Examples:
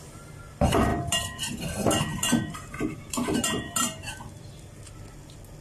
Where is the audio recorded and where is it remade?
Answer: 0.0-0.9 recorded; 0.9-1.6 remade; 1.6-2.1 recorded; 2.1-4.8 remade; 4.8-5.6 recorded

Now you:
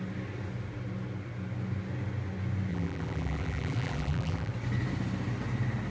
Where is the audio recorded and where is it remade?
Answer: 0.0-2.7 recorded; 2.7-4.5 remade; 4.5-5.9 recorded

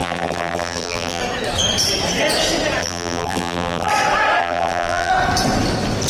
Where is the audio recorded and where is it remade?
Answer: 0.0-1.2 remade; 1.2-2.8 recorded; 2.8-3.9 remade; 3.9-4.4 recorded; 4.4-5.1 remade; 5.1-6.1 recorded

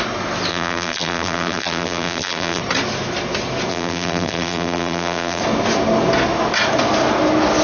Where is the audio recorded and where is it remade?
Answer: 0.0-0.5 recorded; 0.5-2.6 remade; 2.6-3.7 recorded; 3.7-5.4 remade; 5.4-7.6 recorded

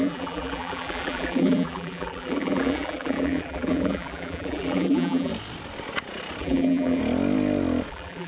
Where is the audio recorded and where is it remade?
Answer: 0.0-5.3 remade; 5.3-6.4 recorded; 6.4-7.0 remade; 7.0-7.9 recorded; 7.9-8.3 remade

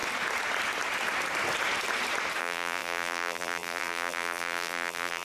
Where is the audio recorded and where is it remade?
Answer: 0.0-2.4 recorded; 2.4-5.2 remade

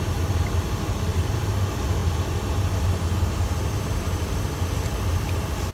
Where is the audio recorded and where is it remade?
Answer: 0.0-1.1 recorded; 1.1-1.6 remade; 1.6-5.7 recorded

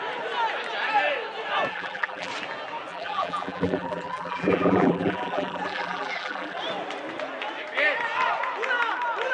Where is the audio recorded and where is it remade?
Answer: 0.0-1.7 recorded; 1.7-2.3 remade; 2.3-2.9 recorded; 2.9-6.6 remade; 6.6-9.3 recorded